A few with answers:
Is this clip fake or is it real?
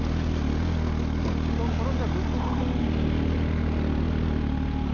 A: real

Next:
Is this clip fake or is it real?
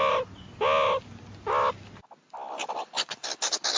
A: real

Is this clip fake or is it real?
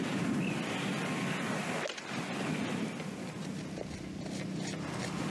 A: real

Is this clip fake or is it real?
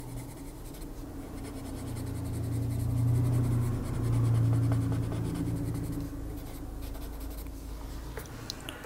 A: real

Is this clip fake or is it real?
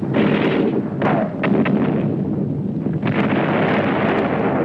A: real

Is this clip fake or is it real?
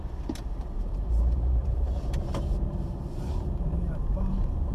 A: fake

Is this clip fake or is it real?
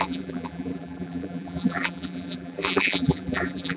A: fake